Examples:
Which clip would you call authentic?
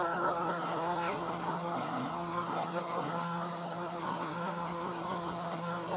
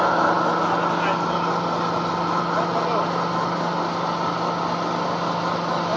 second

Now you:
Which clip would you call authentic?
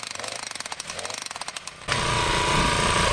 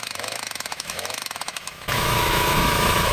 first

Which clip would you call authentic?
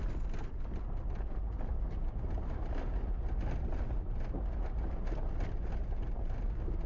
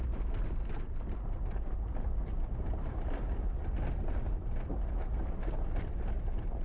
first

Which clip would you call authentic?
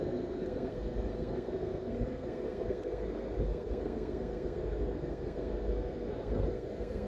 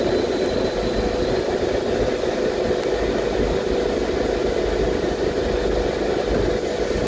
second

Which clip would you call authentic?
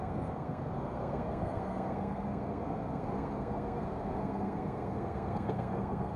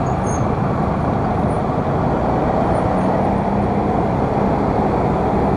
second